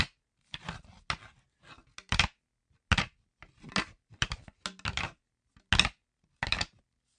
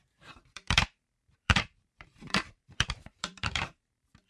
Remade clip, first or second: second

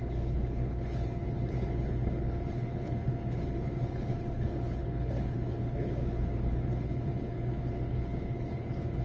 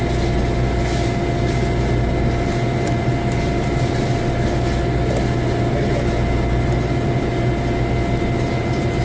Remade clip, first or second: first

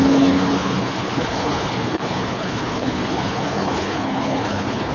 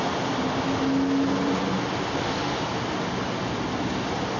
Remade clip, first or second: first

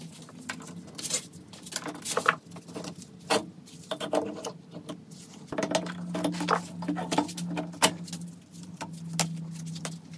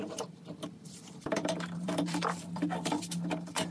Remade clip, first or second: second